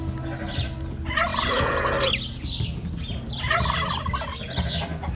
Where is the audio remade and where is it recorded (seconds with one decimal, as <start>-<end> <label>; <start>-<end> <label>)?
0.0-5.1 recorded